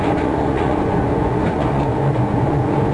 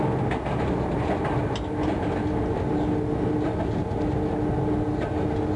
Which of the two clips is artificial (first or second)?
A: first